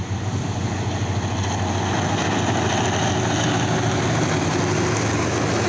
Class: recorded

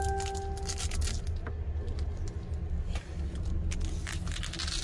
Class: recorded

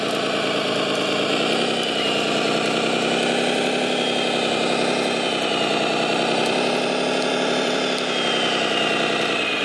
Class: remade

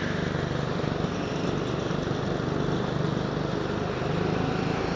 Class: recorded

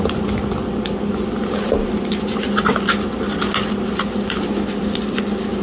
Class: recorded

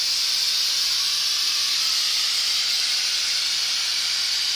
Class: remade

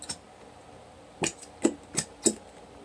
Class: recorded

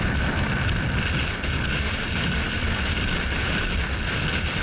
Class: remade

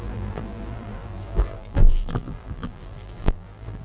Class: remade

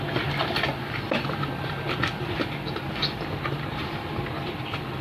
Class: recorded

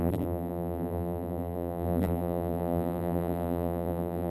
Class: remade